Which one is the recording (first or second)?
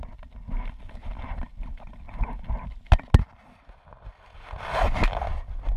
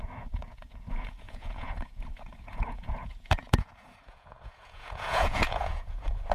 first